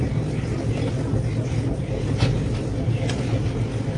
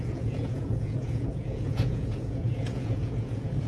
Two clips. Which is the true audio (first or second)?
first